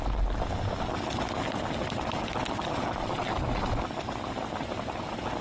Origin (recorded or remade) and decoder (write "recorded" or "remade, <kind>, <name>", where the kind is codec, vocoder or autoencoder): recorded